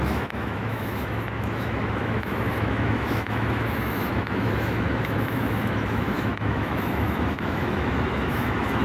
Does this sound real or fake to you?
fake